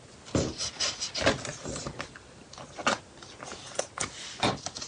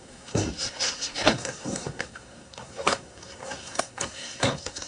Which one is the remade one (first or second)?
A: second